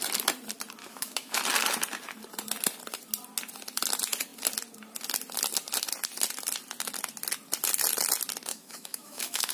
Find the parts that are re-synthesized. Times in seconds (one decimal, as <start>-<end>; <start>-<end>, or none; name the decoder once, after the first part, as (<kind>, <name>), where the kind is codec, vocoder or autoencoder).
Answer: 0.8-1.4 (autoencoder, DAC-VAE); 8.5-9.5